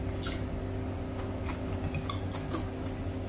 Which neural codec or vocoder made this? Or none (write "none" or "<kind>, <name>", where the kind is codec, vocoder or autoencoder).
none